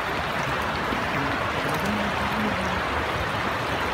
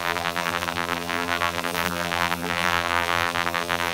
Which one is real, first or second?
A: first